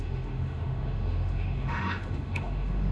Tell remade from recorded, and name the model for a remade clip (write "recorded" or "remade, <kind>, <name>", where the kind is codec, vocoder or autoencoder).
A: remade, autoencoder, DAC-VAE